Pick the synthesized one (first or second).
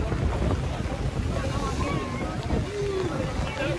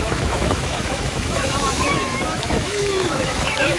second